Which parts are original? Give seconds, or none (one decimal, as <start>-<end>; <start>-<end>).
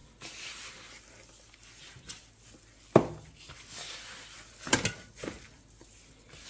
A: 0.0-6.5